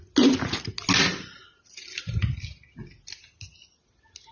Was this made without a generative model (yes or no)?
yes